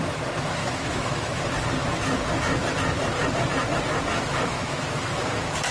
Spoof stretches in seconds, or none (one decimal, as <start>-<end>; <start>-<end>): 0.6-1.4; 4.1-5.7

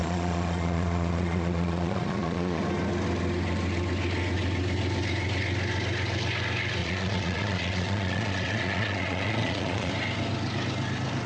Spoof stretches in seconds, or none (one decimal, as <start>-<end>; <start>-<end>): 0.0-2.6; 6.8-9.9

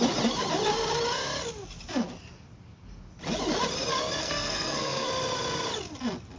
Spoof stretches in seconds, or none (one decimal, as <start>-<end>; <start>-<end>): 4.2-5.1

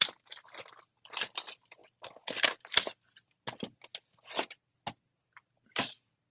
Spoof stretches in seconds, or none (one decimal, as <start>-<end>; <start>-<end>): none

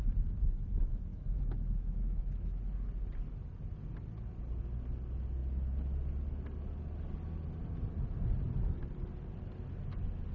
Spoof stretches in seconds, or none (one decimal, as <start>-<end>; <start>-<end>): 1.1-2.6

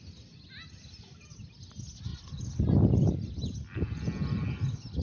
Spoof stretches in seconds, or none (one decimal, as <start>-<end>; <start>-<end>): none